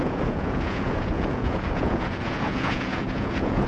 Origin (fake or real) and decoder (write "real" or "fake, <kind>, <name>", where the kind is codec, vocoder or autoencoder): fake, vocoder, Vocos